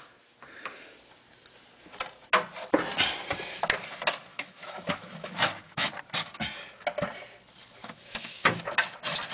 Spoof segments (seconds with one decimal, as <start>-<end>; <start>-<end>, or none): 4.3-5.9; 7.8-8.6